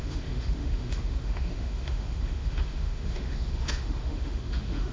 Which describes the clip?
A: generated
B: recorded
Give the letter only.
A